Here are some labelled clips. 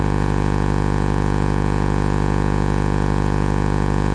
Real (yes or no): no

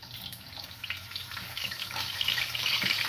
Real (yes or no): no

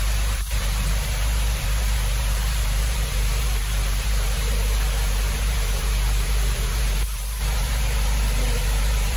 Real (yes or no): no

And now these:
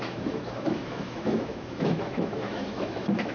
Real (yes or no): no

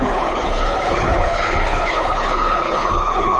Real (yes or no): no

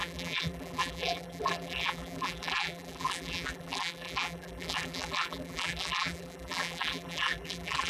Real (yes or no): no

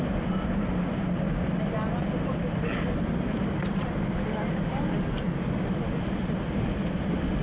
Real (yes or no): yes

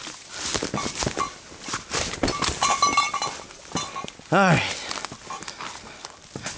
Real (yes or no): yes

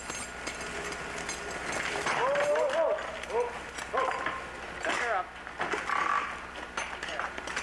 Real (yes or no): yes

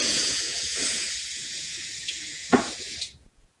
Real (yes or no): no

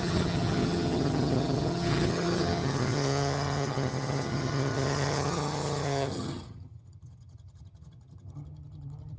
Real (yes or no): no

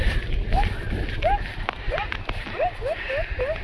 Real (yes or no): yes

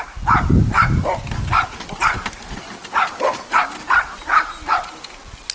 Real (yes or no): yes